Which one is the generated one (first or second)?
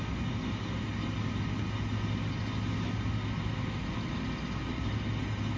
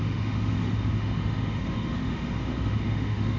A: second